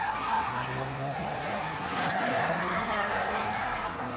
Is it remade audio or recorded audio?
remade